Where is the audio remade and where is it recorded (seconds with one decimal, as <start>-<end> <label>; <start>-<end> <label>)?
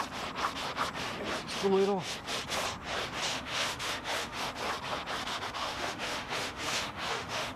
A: 0.0-3.3 recorded; 3.3-4.5 remade; 4.5-5.2 recorded; 5.2-7.6 remade